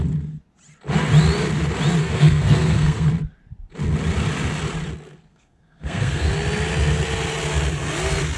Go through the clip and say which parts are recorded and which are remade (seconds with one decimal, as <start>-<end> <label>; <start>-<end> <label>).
0.0-2.0 recorded; 2.0-3.1 remade; 3.1-5.3 recorded; 5.3-6.3 remade; 6.3-8.4 recorded